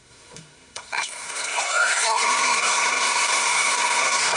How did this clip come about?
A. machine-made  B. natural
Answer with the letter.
A